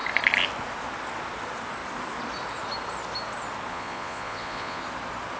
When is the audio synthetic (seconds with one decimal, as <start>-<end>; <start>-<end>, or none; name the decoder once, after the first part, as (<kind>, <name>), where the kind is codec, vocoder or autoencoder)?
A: 3.7-4.8 (vocoder, Vocos)